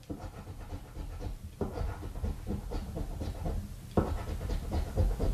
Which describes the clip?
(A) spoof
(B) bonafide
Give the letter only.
A